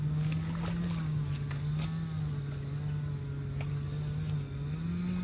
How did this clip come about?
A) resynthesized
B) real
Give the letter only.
B